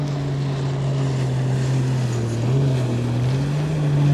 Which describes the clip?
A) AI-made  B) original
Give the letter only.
B